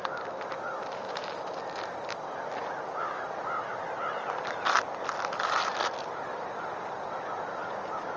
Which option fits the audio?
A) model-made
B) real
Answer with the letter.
B